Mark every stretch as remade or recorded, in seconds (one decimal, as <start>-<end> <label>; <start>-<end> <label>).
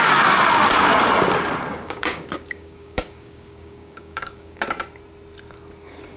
0.0-1.7 recorded; 1.7-4.8 remade; 4.8-6.2 recorded